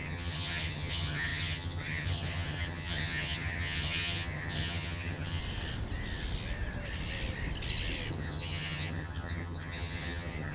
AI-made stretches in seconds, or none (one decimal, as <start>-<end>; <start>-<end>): 0.0-5.4; 8.1-10.5